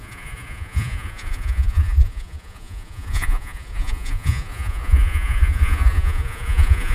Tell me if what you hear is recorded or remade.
remade